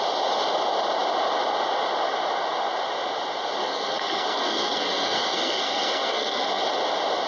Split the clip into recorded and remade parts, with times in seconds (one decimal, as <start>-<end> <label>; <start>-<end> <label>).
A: 0.0-3.6 recorded; 3.6-6.6 remade; 6.6-7.3 recorded